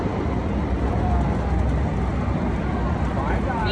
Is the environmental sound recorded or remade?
remade